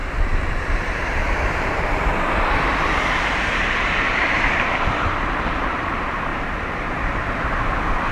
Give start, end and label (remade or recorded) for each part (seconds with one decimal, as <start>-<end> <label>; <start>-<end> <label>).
0.0-8.1 remade